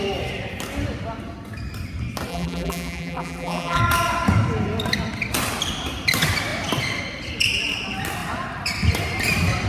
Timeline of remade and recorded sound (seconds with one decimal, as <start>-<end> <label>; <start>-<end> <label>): 0.0-2.3 recorded; 2.3-3.8 remade; 3.8-9.7 recorded